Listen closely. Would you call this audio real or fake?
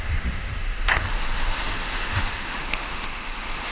fake